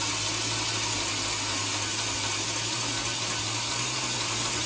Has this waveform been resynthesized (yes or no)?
no